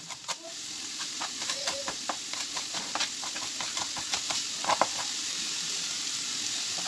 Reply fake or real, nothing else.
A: fake